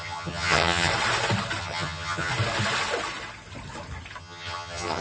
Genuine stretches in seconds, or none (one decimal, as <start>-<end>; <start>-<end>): 0.9-1.6; 2.3-4.2